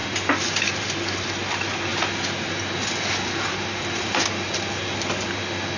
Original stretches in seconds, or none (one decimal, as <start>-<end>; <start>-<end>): 0.8-5.8